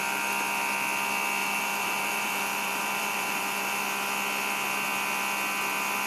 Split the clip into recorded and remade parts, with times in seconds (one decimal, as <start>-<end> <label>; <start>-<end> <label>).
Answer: 0.0-1.4 recorded; 1.4-3.8 remade; 3.8-6.1 recorded